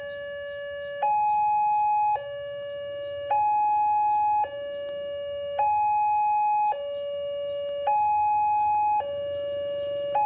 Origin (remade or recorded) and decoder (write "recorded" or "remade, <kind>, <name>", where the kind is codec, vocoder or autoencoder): recorded